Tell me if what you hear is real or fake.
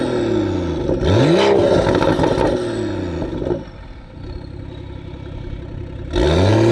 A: real